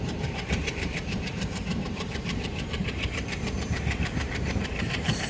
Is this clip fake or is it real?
fake